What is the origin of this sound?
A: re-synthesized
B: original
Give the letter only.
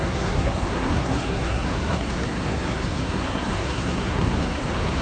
A